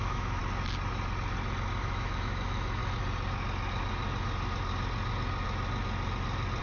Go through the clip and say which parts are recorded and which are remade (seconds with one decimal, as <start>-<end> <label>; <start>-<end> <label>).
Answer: 0.0-0.4 remade; 0.4-1.8 recorded; 1.8-2.8 remade; 2.8-6.6 recorded